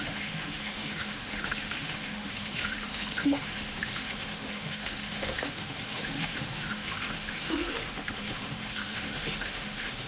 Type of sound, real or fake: fake